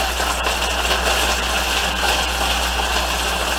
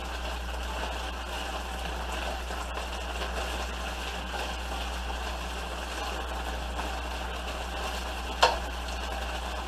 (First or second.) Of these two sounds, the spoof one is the first